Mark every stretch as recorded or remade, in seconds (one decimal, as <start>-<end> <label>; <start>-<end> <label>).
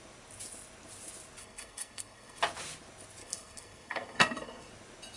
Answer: 0.0-1.4 recorded; 1.4-2.4 remade; 2.4-3.2 recorded; 3.2-4.7 remade; 4.7-5.2 recorded